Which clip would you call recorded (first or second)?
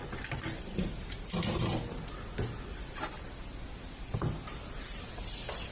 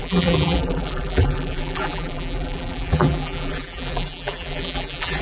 first